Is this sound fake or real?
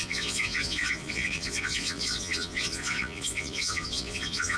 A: fake